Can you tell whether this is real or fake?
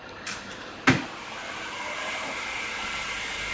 fake